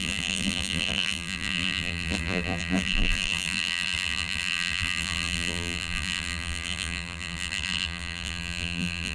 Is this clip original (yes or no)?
no